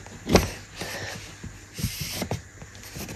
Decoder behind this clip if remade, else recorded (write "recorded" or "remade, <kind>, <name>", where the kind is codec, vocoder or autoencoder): recorded